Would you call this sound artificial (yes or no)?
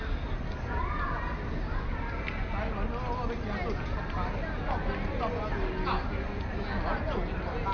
no